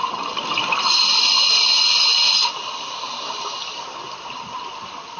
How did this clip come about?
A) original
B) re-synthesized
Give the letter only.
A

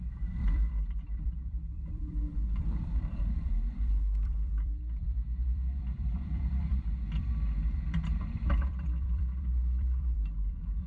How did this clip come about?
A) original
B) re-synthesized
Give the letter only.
B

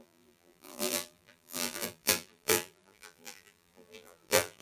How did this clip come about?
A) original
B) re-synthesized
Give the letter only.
B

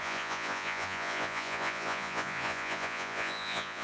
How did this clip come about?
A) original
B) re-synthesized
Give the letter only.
B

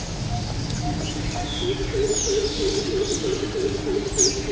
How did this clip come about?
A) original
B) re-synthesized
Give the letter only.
A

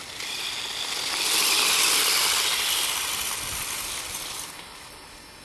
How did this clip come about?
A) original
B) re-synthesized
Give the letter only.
A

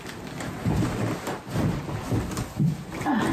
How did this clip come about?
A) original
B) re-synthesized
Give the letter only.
A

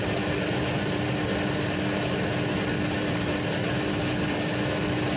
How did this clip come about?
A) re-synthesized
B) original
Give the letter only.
B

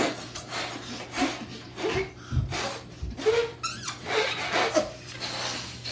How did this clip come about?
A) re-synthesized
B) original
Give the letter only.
B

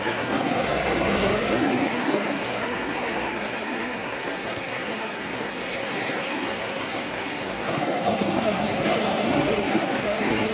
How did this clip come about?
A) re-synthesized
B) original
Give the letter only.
A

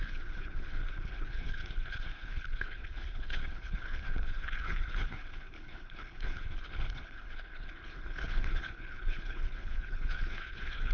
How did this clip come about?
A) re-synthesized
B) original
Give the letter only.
A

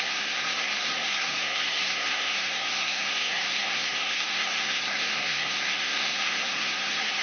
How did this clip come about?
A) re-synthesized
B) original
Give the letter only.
A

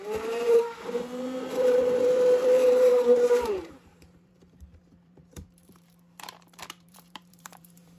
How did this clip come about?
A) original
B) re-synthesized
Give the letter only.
B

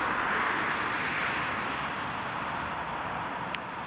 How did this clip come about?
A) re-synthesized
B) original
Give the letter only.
B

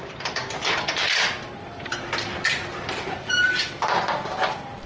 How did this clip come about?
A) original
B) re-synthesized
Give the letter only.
B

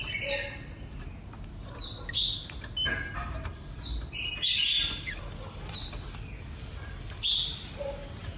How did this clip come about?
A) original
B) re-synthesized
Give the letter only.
A